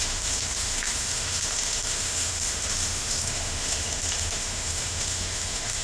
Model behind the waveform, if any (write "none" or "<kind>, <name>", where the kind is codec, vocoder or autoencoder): autoencoder, DAC-VAE